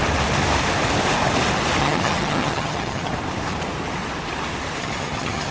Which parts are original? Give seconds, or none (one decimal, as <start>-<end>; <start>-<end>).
0.0-1.8; 3.1-4.8

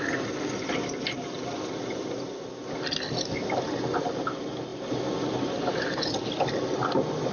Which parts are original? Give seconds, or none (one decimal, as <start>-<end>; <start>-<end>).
0.0-7.3

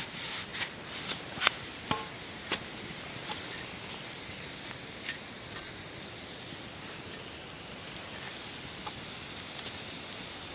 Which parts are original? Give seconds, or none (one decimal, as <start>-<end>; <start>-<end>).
0.0-10.5

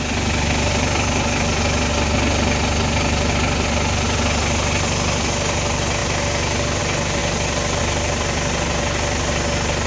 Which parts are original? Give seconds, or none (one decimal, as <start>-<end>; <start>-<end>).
0.0-9.9

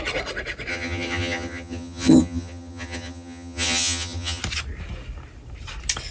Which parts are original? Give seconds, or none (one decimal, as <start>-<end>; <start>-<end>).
0.0-0.7; 4.4-6.1

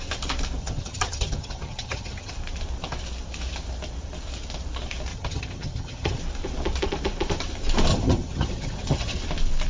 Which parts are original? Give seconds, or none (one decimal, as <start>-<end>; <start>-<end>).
0.0-0.6; 2.3-5.1; 6.2-7.9; 9.2-9.7

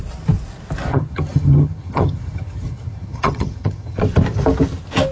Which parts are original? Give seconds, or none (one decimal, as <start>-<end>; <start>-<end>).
0.0-0.9; 4.0-5.1

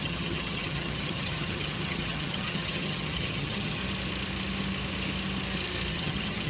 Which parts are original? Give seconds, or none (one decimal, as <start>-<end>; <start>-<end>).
3.8-5.9